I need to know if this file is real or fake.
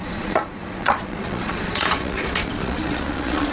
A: fake